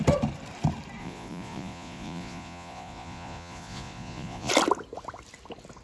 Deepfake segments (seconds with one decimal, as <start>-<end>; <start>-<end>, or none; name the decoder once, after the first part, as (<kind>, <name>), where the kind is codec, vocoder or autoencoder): 1.0-4.5 (vocoder, Vocos)